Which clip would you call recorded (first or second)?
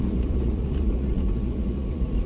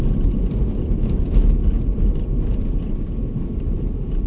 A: second